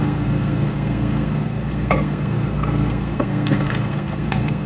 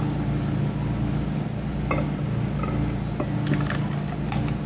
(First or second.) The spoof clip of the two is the first